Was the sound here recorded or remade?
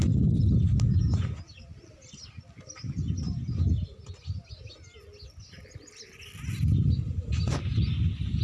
recorded